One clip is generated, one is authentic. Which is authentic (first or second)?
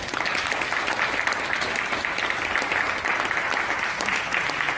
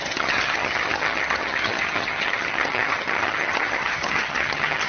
first